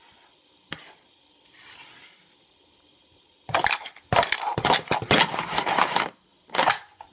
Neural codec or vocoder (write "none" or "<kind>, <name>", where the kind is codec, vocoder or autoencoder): none